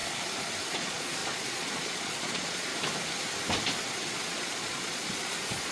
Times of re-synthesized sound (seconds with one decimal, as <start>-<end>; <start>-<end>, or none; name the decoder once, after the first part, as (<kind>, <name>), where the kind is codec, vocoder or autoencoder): 0.7-2.7 (vocoder, Vocos); 3.8-5.7